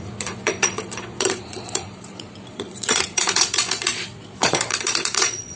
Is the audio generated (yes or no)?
yes